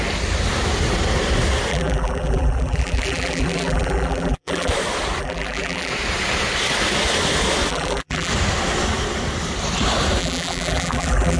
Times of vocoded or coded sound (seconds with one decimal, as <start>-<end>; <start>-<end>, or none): 1.7-4.7; 5.2-5.9; 7.7-8.3; 10.2-11.4